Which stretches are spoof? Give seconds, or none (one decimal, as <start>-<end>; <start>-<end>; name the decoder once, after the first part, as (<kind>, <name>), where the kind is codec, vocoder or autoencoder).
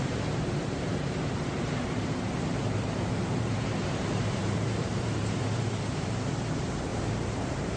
0.0-7.8 (vocoder, BigVGAN v2)